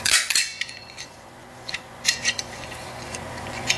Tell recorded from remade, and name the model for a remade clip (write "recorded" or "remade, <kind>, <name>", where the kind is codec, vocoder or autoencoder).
remade, vocoder, Vocos